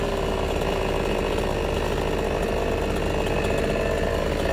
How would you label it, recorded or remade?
recorded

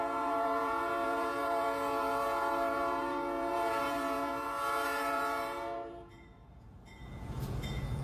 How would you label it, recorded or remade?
remade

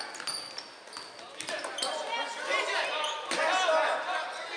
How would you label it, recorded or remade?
recorded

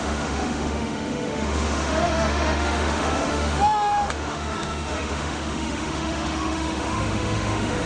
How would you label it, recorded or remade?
remade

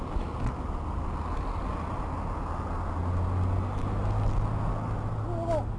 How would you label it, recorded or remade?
recorded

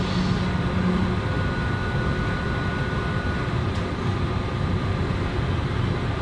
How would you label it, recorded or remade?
recorded